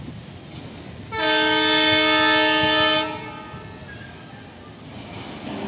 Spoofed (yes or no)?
no